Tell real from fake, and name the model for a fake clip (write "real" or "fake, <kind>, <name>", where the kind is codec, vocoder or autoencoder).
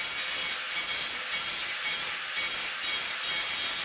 real